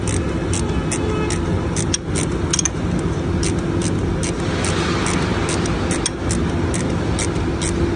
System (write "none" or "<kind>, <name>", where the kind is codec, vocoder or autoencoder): none